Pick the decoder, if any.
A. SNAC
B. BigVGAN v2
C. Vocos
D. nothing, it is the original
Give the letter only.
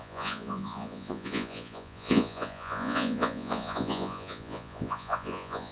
C